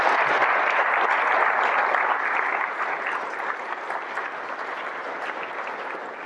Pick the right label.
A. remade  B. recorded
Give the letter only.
B